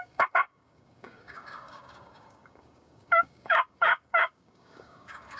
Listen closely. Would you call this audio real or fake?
fake